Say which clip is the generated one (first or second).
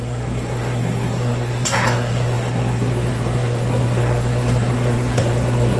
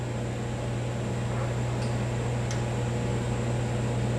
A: first